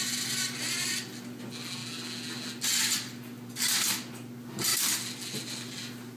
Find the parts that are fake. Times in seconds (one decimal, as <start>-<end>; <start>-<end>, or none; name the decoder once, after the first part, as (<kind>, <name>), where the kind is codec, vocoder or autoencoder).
none